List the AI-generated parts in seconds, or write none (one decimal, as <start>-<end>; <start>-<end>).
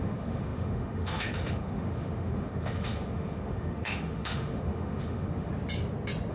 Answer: 0.0-5.5